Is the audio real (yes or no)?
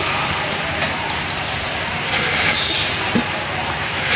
no